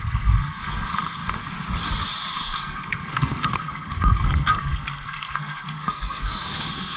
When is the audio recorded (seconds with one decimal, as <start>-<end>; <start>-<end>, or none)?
1.2-2.3